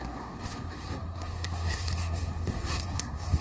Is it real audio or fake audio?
fake